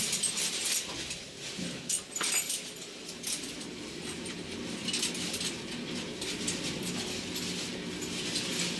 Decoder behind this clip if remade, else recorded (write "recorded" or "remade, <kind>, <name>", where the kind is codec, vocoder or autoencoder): recorded